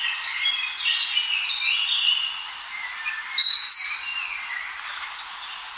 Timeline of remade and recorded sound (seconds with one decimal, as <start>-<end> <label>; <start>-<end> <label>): 0.0-4.1 recorded; 4.1-4.6 remade; 4.6-5.8 recorded